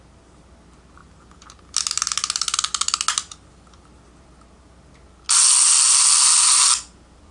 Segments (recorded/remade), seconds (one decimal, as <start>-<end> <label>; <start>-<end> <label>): 0.0-7.3 recorded